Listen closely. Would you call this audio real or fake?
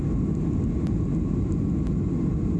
real